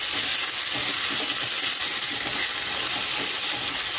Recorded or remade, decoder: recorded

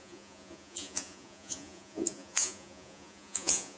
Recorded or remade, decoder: remade, vocoder, Vocos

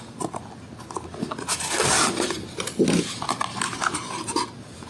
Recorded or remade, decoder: recorded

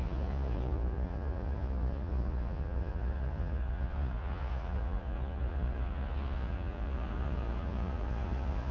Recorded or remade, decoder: remade, vocoder, Vocos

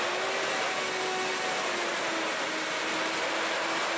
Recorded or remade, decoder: recorded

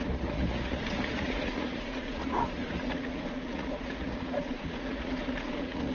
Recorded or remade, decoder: remade, vocoder, Vocos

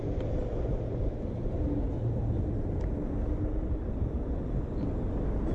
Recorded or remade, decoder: recorded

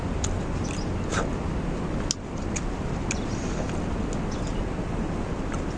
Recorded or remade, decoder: recorded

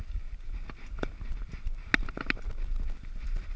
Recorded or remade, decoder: recorded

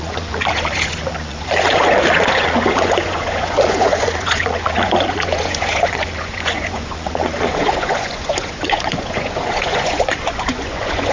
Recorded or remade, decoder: remade, vocoder, Vocos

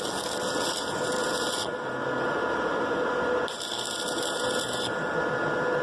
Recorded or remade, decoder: recorded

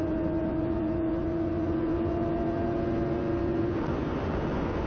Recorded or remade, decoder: remade, vocoder, Vocos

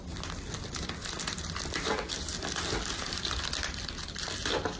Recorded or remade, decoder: recorded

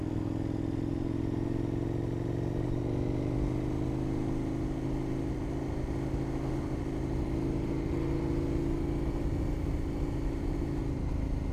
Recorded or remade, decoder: recorded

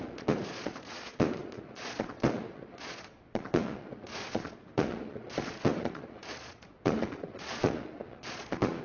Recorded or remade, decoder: remade, vocoder, Vocos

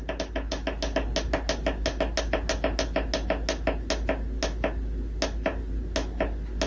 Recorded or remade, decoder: recorded